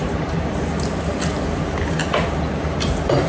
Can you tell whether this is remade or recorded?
recorded